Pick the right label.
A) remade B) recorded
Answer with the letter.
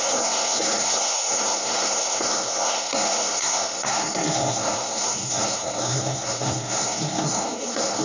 A